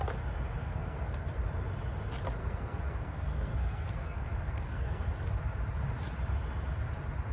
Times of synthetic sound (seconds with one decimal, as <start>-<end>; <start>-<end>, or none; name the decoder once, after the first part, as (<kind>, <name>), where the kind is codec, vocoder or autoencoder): 0.6-1.4 (codec, SNAC); 2.4-5.0